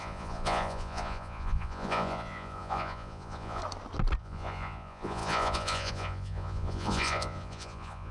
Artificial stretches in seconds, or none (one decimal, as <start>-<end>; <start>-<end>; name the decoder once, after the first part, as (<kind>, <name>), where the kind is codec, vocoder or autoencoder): 0.0-3.6 (vocoder, Vocos); 4.2-8.1

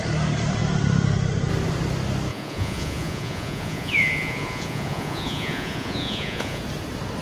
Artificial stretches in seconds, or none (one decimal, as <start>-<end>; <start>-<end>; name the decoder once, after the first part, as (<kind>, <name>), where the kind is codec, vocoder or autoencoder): 2.3-6.6 (vocoder, Vocos)

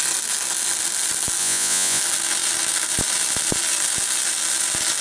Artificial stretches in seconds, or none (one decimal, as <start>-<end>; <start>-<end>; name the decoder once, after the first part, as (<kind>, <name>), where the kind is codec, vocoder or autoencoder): 1.4-2.0 (vocoder, Vocos)